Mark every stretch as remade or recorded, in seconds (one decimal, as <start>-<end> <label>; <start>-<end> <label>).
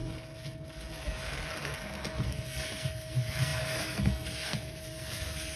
0.0-5.6 remade